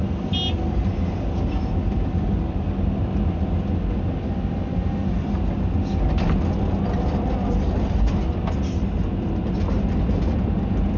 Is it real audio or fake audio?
real